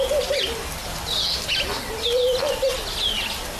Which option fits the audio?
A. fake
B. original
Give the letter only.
B